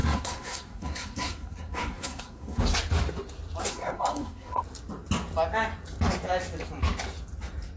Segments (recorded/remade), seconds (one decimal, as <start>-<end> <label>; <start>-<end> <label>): 0.0-2.6 remade; 2.6-3.7 recorded; 3.7-4.6 remade; 4.6-7.8 recorded